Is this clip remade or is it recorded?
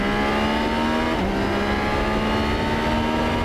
recorded